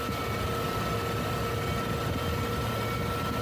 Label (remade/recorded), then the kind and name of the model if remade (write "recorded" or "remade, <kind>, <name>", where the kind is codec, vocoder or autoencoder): recorded